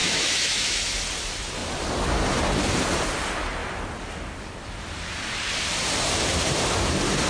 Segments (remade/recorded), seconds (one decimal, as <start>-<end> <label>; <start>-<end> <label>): 0.0-1.0 remade; 1.0-7.3 recorded